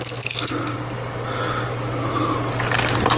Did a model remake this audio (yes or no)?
no